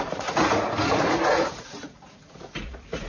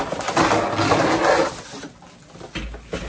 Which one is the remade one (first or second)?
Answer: first